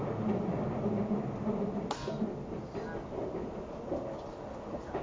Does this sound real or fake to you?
real